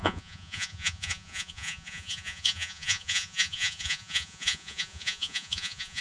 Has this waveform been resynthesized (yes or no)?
yes